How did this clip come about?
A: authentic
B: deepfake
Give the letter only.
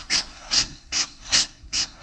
B